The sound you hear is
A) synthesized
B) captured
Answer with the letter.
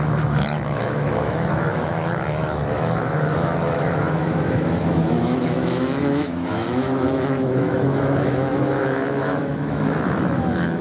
A